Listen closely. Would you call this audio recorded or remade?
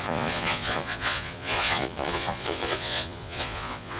remade